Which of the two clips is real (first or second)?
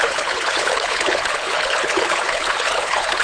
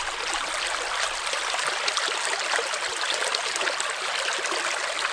second